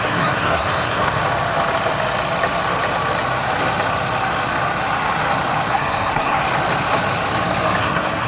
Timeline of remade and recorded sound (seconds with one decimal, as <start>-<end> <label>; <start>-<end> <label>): 0.0-1.2 remade; 1.2-5.7 recorded; 5.7-6.4 remade; 6.4-7.8 recorded; 7.8-8.3 remade